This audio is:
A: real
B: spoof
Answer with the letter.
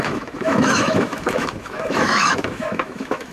B